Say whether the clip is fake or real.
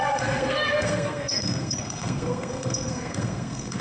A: fake